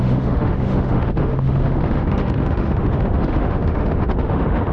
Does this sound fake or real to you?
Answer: fake